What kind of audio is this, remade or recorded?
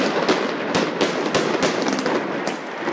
recorded